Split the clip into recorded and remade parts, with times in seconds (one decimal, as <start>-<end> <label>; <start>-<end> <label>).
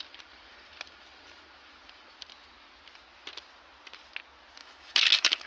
0.0-4.6 recorded; 4.6-5.5 remade